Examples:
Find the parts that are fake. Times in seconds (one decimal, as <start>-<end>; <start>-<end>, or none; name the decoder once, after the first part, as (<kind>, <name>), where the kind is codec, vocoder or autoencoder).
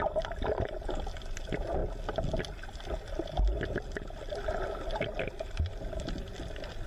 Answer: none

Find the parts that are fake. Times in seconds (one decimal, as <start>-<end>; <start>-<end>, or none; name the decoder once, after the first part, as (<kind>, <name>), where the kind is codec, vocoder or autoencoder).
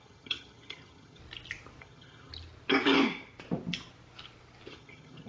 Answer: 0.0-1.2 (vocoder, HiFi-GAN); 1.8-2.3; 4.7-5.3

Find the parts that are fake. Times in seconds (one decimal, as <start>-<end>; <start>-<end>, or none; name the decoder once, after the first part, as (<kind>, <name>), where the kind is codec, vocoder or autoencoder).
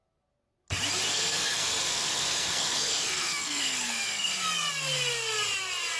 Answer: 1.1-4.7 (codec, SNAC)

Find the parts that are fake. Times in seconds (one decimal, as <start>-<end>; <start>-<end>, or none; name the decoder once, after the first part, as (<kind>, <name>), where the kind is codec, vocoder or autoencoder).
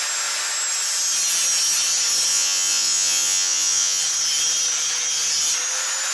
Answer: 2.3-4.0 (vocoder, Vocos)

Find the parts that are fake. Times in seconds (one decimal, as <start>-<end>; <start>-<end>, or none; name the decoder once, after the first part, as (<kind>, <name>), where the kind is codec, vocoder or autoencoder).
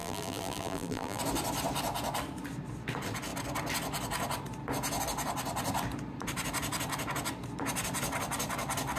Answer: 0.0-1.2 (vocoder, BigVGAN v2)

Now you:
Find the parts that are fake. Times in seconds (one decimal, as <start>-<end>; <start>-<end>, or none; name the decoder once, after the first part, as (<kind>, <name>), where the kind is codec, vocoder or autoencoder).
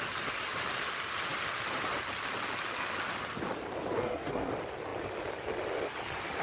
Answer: 4.0-4.5 (codec, SNAC)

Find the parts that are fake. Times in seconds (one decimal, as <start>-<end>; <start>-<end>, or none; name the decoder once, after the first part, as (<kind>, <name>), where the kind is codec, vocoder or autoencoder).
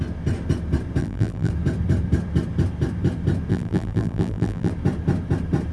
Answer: 1.0-1.5 (vocoder, BigVGAN v2); 3.5-4.7